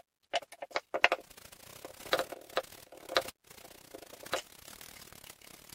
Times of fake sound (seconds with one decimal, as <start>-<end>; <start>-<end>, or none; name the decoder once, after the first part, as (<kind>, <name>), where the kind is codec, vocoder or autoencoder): none